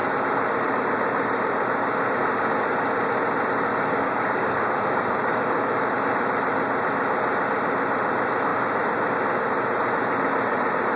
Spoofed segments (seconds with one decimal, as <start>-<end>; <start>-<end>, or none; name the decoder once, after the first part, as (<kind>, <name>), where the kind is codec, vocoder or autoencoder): 3.7-5.9 (codec, DAC)